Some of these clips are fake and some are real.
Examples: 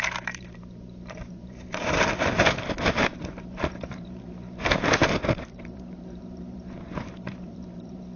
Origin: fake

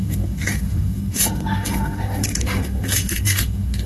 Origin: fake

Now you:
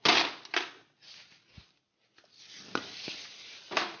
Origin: real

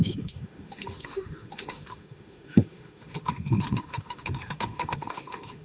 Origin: fake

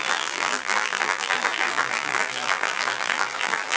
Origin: fake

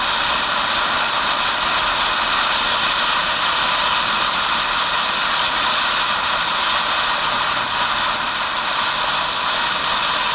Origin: real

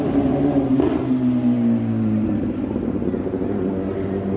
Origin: real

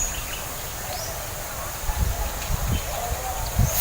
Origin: real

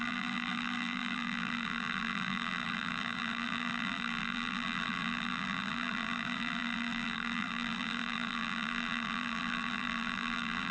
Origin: fake